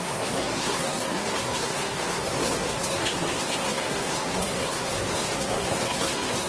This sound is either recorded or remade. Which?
remade